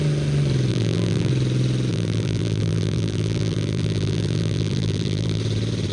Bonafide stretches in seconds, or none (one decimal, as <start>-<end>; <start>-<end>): 0.0-0.7; 1.3-1.9; 5.4-5.9